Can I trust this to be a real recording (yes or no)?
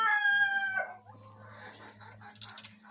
yes